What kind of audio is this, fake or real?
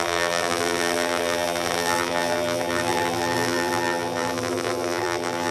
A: fake